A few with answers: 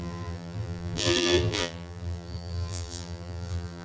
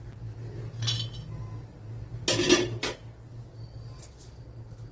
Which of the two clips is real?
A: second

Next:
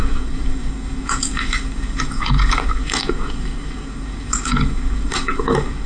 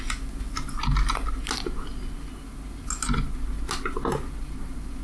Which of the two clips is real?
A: second